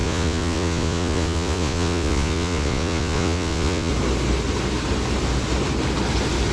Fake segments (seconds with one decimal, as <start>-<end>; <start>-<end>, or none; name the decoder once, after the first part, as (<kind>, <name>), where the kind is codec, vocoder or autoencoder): 0.0-3.9 (vocoder, Vocos)